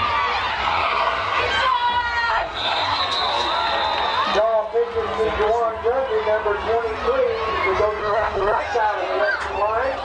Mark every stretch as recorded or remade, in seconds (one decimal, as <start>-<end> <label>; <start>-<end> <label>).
0.0-0.5 recorded; 0.5-1.4 remade; 1.4-2.3 recorded; 2.3-3.0 remade; 3.0-8.0 recorded; 8.0-8.6 remade; 8.6-10.0 recorded